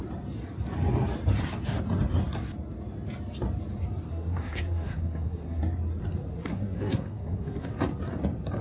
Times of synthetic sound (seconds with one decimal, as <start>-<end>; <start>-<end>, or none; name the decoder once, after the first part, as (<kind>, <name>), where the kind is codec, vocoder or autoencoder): 4.1-5.6 (codec, SNAC); 6.3-7.7